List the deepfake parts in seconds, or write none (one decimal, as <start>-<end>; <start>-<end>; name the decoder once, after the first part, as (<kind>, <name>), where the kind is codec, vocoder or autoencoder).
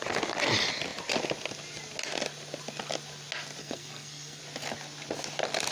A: 3.6-4.4 (codec, SNAC)